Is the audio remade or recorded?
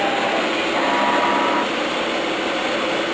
recorded